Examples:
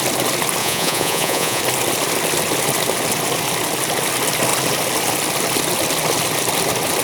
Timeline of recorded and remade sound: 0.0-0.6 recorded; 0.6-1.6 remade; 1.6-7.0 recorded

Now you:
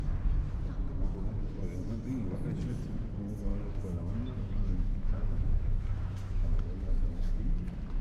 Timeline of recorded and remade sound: 0.0-3.5 recorded; 3.5-7.5 remade; 7.5-8.0 recorded

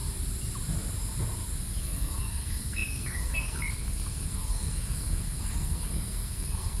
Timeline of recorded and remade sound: 0.0-1.8 recorded; 1.8-6.8 remade

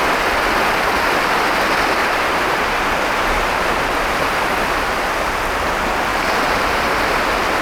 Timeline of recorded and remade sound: 0.0-2.0 recorded; 2.0-5.0 remade; 5.0-6.1 recorded; 6.1-7.1 remade; 7.1-7.6 recorded

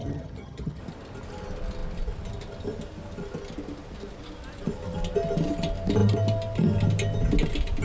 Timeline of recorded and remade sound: 0.0-0.8 remade; 0.8-7.8 recorded